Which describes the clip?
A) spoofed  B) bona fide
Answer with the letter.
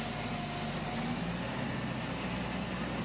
B